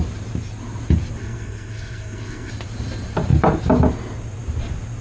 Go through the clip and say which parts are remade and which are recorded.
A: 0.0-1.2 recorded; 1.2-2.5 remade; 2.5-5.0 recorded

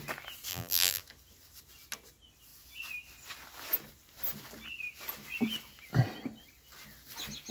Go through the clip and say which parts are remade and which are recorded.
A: 0.0-0.5 recorded; 0.5-1.0 remade; 1.0-7.5 recorded

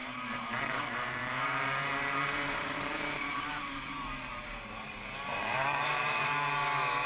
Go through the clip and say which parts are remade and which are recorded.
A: 0.0-4.3 remade; 4.3-5.3 recorded; 5.3-6.5 remade; 6.5-7.1 recorded

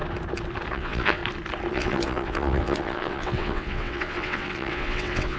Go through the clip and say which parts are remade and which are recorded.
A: 0.0-0.7 recorded; 0.7-1.2 remade; 1.2-1.7 recorded; 1.7-5.4 remade

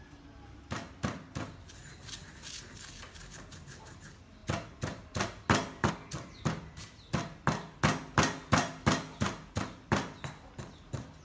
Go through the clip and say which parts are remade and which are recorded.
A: 0.0-11.2 recorded

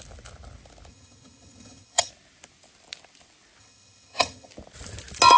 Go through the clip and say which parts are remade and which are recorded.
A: 0.0-0.9 recorded; 0.9-2.1 remade; 2.1-3.6 recorded; 3.6-4.5 remade; 4.5-5.4 recorded

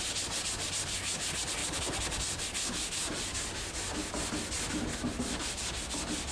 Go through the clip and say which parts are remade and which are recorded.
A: 0.0-6.3 recorded